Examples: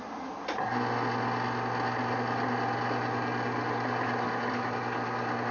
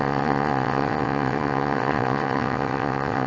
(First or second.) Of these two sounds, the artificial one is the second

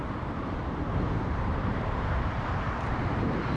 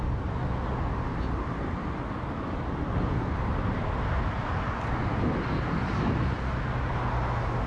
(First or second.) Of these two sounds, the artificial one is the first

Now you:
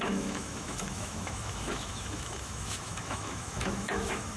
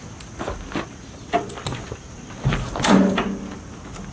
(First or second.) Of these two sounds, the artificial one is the first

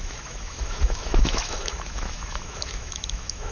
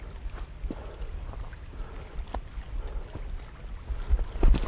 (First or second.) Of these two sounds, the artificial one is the first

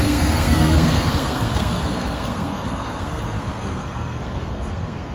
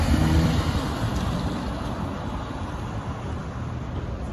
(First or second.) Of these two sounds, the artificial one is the first